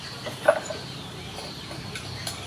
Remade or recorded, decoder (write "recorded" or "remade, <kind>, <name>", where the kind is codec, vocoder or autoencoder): remade, vocoder, BigVGAN v2